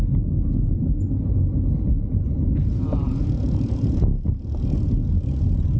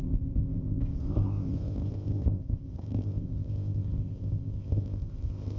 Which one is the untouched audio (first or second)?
first